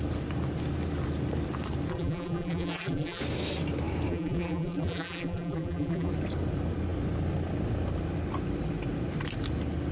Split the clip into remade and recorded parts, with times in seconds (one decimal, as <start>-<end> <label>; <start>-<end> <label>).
0.0-1.9 recorded; 1.9-3.2 remade; 3.2-4.1 recorded; 4.1-6.1 remade; 6.1-9.9 recorded

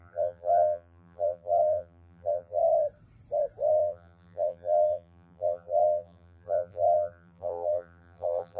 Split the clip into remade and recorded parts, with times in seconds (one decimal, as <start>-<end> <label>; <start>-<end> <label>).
0.0-2.6 remade; 2.6-3.7 recorded; 3.7-8.6 remade

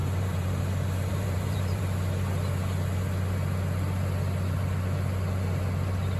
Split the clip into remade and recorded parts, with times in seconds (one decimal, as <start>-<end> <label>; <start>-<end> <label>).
0.0-0.6 remade; 0.6-1.1 recorded; 1.1-1.8 remade; 1.8-6.2 recorded

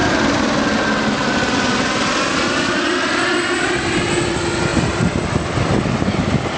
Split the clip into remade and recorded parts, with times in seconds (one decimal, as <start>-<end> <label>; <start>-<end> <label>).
0.0-4.7 recorded; 4.7-5.2 remade; 5.2-6.6 recorded

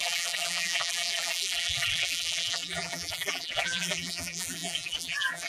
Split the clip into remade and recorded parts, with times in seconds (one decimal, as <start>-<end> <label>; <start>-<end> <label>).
0.0-5.5 remade

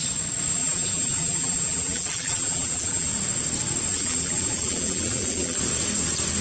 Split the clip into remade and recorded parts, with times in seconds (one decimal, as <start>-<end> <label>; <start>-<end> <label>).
0.0-0.6 recorded; 0.6-3.1 remade; 3.1-3.9 recorded; 3.9-5.6 remade; 5.6-6.4 recorded